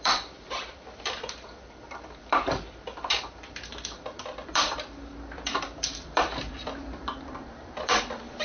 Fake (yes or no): yes